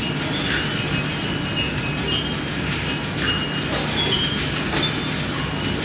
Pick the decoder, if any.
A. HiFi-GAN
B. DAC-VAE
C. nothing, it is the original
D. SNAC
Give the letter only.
C